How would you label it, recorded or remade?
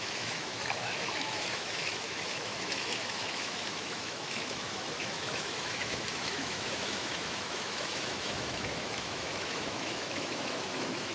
remade